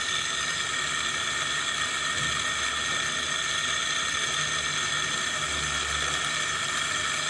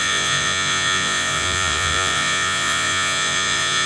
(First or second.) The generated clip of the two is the second